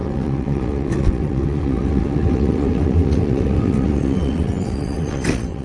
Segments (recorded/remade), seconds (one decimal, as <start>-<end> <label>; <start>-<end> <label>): 0.0-5.6 remade